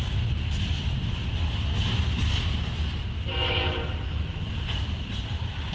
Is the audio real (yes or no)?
yes